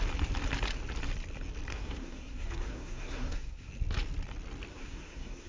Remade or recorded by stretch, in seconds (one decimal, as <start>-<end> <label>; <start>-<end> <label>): 0.0-1.7 recorded; 1.7-3.7 remade; 3.7-4.7 recorded; 4.7-5.5 remade